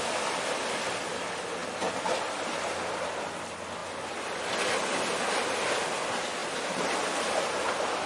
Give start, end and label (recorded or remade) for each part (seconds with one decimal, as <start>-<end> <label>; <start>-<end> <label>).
0.0-8.1 recorded